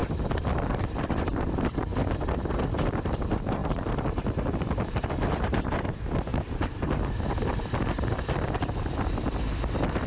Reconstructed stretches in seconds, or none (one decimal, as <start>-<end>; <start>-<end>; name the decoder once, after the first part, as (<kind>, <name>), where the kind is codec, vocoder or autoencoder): 0.0-10.1 (vocoder, BigVGAN v2)